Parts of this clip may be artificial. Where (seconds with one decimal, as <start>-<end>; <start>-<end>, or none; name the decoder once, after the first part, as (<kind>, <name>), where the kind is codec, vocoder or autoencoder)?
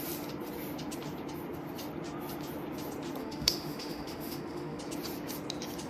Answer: 3.2-4.8 (autoencoder, DAC-VAE)